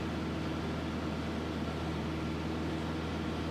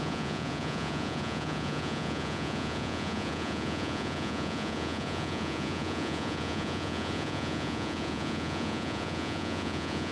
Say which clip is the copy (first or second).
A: second